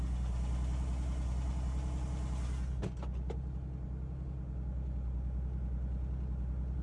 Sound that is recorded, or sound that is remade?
recorded